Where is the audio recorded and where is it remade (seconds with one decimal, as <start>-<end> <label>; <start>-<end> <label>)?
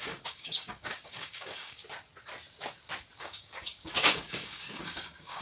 0.0-1.8 remade; 1.8-3.2 recorded; 3.2-5.4 remade